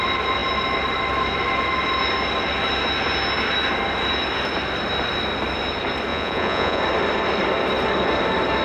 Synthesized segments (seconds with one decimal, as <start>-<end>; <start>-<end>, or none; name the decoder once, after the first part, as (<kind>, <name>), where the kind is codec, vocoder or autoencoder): 6.1-6.8 (vocoder, Vocos)